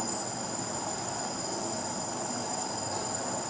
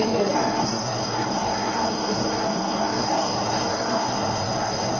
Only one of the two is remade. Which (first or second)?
second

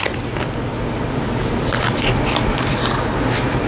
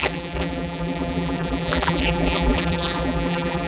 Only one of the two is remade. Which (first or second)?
second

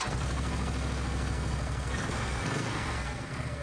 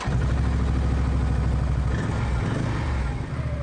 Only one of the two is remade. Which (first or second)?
first